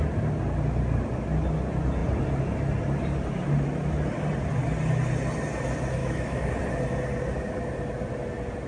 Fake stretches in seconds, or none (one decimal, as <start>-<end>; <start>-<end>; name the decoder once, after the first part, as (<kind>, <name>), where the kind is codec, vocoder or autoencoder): 6.0-6.5 (autoencoder, DAC-VAE)